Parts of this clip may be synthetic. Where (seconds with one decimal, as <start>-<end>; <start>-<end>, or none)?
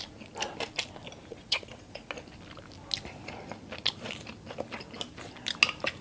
1.3-2.1